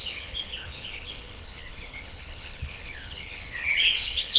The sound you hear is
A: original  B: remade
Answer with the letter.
B